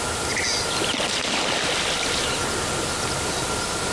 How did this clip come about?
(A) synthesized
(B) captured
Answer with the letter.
B